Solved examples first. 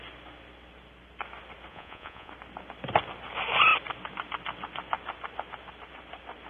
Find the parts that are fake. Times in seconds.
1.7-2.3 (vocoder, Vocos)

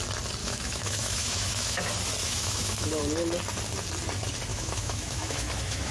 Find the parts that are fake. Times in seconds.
0.4-1.8 (autoencoder, DAC-VAE); 2.2-3.0; 4.5-5.9

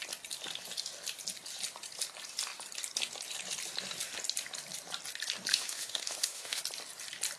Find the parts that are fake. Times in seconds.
5.5-6.6 (autoencoder, DAC-VAE)

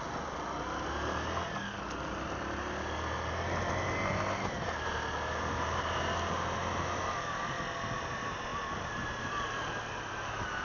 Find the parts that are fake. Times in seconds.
none

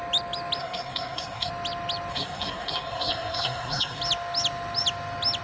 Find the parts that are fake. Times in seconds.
0.6-1.5 (codec, SNAC); 2.1-4.0